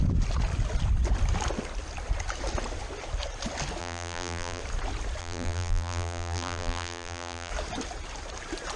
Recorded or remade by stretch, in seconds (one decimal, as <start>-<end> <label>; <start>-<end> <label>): 0.0-3.8 recorded; 3.8-4.6 remade; 4.6-5.2 recorded; 5.2-7.5 remade; 7.5-8.8 recorded